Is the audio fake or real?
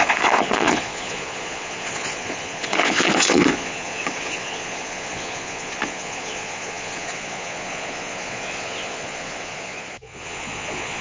fake